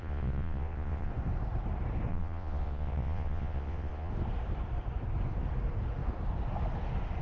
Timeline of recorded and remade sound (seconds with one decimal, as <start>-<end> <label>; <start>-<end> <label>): 0.0-1.1 remade; 1.1-2.1 recorded; 2.1-4.1 remade; 4.1-7.2 recorded